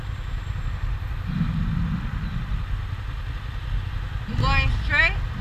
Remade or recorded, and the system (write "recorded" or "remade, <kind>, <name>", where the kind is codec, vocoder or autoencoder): recorded